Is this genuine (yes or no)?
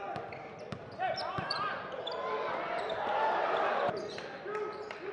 yes